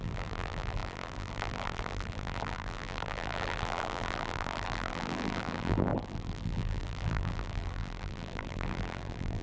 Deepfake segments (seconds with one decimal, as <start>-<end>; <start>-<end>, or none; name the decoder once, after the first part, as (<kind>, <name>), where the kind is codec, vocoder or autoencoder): 0.0-9.4 (vocoder, BigVGAN v2)